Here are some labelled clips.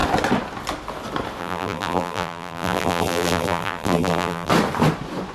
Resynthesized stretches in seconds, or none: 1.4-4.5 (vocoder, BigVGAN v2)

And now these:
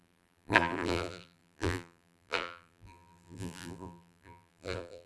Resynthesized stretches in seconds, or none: 0.0-5.1 (vocoder, BigVGAN v2)